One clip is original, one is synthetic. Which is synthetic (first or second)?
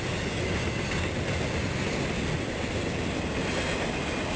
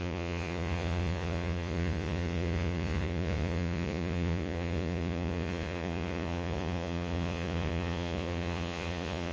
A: second